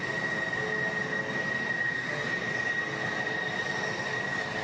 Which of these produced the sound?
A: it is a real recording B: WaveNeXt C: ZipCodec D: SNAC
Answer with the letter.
A